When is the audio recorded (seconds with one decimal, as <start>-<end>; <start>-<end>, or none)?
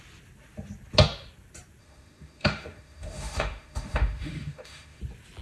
0.0-1.8; 5.0-5.4